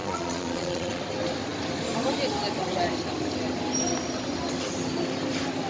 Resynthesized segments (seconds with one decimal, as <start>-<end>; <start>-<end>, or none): 0.0-1.0